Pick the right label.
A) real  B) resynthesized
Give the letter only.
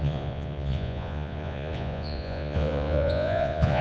B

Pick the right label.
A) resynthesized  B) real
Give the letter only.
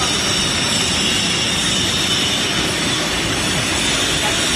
B